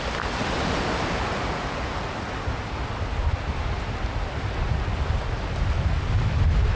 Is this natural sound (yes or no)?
yes